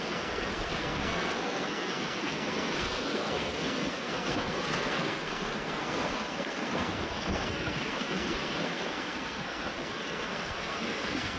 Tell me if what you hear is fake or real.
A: fake